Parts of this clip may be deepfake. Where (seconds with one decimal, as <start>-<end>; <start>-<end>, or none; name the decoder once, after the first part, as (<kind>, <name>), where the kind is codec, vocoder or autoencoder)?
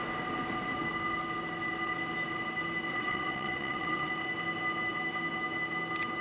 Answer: 2.9-4.1 (vocoder, WaveNeXt)